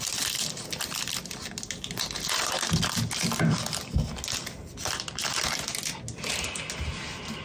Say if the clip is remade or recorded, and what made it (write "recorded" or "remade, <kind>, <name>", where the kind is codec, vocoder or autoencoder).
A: recorded